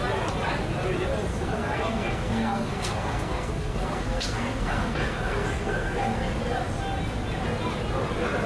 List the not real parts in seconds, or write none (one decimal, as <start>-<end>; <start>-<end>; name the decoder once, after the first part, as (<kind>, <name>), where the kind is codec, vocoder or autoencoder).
1.3-6.4 (codec, SNAC)